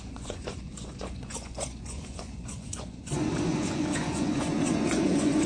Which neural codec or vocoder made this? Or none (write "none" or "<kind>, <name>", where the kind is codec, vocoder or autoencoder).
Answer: vocoder, Vocos